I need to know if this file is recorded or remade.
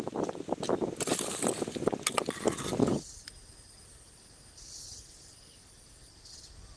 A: recorded